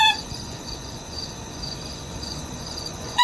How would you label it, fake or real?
fake